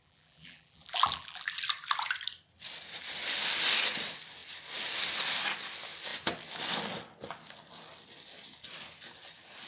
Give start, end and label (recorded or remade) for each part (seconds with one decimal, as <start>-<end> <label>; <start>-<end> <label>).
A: 0.0-1.5 remade; 1.5-9.7 recorded